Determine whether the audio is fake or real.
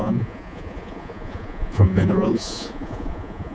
fake